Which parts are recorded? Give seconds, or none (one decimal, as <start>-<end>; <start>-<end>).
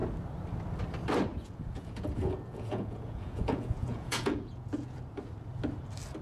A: 0.0-1.3; 5.0-6.2